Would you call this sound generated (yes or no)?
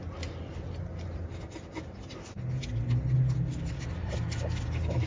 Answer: no